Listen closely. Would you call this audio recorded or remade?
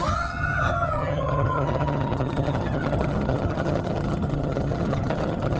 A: remade